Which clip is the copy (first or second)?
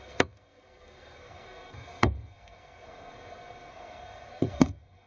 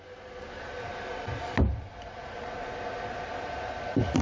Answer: first